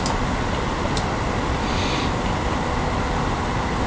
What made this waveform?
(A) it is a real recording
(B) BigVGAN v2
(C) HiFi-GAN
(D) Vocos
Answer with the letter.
A